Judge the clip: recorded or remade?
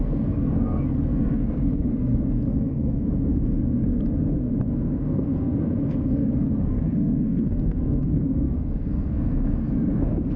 remade